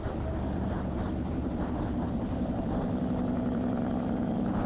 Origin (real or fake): fake